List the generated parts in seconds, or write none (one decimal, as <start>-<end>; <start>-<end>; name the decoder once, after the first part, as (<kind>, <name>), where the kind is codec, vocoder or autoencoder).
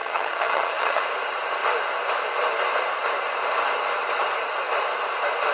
0.0-1.0 (vocoder, HiFi-GAN)